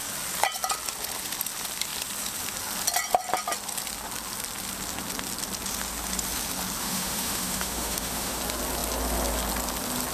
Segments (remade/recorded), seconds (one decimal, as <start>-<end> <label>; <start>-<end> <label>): 0.0-6.8 recorded; 6.8-8.4 remade; 8.4-10.1 recorded